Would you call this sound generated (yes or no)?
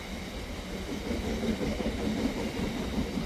no